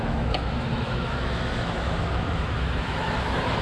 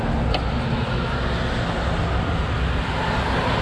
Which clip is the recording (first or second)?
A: second